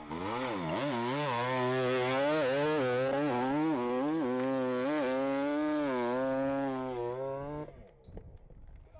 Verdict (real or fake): real